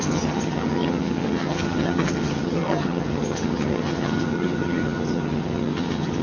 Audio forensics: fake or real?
fake